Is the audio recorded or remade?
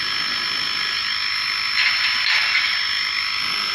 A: recorded